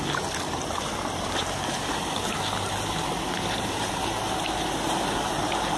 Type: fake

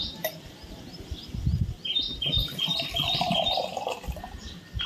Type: fake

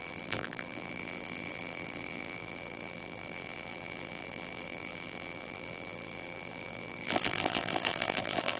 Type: fake